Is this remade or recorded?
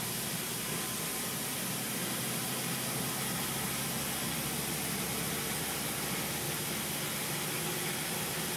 recorded